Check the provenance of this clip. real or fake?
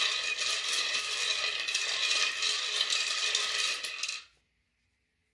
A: real